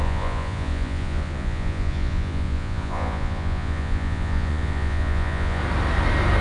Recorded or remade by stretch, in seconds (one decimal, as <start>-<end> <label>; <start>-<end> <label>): 0.0-5.6 remade; 5.6-6.4 recorded